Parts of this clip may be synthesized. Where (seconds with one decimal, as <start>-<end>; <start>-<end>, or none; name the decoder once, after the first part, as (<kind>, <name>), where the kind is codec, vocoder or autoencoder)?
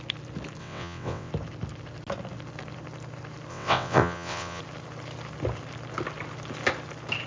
0.6-1.3 (vocoder, WaveNeXt); 3.5-4.6